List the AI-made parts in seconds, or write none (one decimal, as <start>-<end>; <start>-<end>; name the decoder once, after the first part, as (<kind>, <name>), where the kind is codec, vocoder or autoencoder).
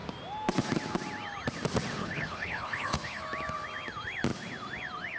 2.0-3.2 (codec, HILCodec)